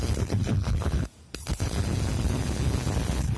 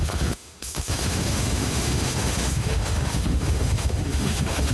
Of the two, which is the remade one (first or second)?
second